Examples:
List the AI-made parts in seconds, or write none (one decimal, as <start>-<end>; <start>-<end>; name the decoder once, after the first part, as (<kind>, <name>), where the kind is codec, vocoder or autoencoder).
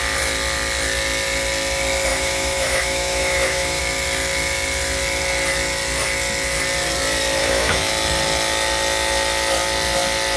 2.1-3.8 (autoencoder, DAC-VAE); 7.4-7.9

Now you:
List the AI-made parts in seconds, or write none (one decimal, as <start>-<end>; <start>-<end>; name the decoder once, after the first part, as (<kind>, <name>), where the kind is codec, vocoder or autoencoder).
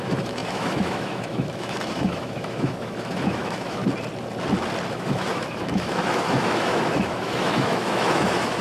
0.0-3.8 (autoencoder, DAC-VAE); 4.9-8.6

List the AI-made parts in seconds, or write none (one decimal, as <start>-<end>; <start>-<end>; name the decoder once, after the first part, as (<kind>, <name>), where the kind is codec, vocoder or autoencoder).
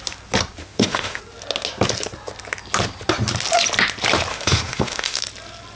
0.6-1.2 (autoencoder, DAC-VAE); 4.3-5.2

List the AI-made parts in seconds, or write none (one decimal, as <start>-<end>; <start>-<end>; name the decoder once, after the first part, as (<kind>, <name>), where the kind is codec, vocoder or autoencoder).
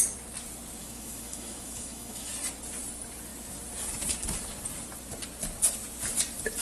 0.8-2.3 (autoencoder, DAC-VAE)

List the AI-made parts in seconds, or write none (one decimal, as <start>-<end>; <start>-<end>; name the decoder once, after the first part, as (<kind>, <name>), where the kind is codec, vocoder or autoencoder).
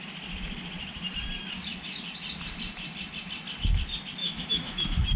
4.2-5.2 (autoencoder, DAC-VAE)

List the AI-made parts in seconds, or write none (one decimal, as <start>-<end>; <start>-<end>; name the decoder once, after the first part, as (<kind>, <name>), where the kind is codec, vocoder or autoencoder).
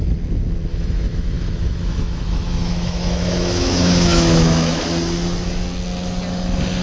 0.7-4.8 (autoencoder, DAC-VAE)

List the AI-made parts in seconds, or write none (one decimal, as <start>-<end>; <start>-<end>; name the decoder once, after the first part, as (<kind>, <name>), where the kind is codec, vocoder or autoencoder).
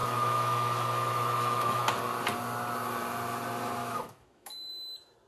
0.0-1.8 (autoencoder, DAC-VAE); 3.8-4.7